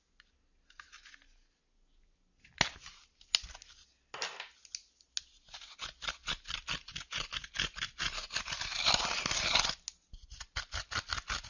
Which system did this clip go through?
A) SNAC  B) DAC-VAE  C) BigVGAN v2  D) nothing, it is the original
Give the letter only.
D